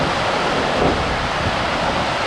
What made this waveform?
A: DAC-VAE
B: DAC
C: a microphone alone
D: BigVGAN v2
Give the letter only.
C